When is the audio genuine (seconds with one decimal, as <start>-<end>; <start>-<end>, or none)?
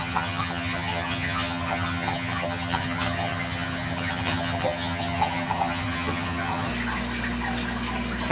6.7-8.3